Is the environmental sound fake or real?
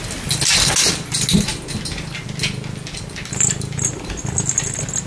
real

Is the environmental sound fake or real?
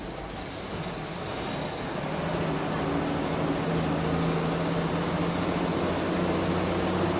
real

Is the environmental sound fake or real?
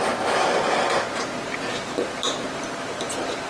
fake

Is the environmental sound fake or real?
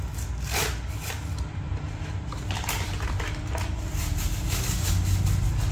real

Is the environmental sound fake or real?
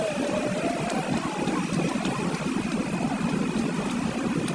real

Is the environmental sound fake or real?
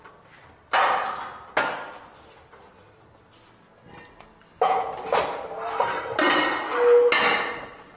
real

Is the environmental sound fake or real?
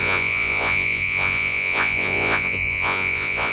fake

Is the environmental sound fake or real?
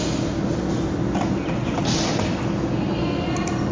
real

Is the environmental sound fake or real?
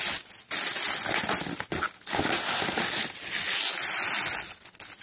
real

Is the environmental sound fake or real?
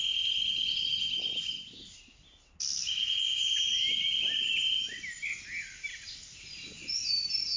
real